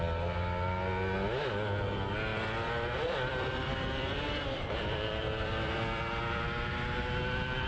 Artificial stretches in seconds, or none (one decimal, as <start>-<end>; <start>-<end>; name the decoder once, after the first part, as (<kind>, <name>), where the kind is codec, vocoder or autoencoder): 2.3-6.0 (vocoder, BigVGAN v2)